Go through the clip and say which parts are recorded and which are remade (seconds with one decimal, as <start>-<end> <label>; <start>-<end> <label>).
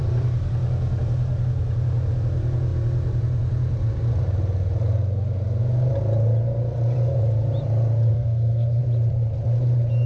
0.0-8.1 recorded; 8.1-8.8 remade; 8.8-10.1 recorded